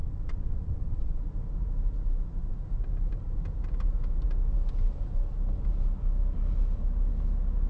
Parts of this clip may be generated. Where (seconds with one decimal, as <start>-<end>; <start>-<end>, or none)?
0.0-1.2